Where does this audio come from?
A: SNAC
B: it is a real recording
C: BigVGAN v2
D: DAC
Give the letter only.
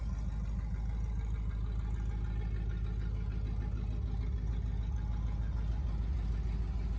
B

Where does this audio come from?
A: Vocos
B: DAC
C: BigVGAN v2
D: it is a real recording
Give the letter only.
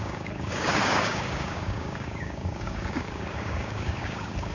B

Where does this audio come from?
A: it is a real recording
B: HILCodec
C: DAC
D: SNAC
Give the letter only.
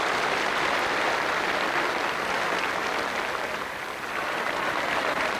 A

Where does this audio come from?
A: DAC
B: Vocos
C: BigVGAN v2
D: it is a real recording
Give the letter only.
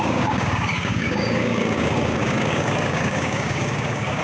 A